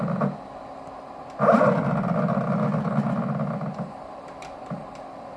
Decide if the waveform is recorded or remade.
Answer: recorded